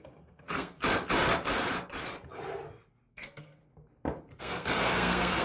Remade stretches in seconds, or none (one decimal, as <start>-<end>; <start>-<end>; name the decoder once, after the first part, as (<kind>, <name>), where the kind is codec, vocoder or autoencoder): 0.0-0.8 (codec, SNAC); 3.1-3.7; 4.4-5.4